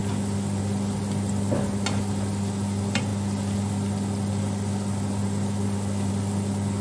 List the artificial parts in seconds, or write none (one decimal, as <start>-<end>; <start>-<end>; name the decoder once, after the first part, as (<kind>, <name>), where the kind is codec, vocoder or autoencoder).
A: none